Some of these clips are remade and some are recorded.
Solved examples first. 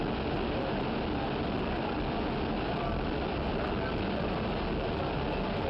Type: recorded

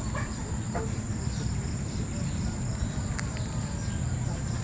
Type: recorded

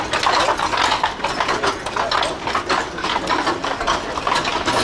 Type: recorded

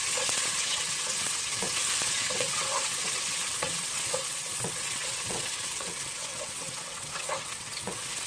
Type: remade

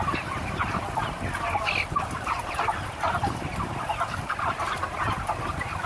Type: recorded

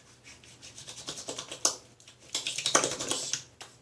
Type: recorded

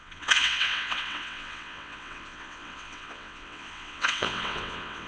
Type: remade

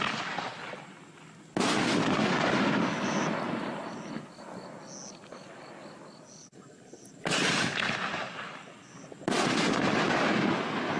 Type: recorded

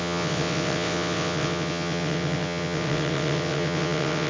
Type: remade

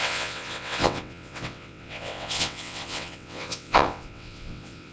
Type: remade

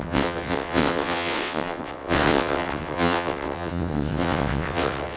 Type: remade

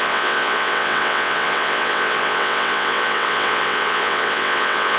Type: remade